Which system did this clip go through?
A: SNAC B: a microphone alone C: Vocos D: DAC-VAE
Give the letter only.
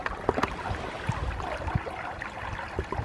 B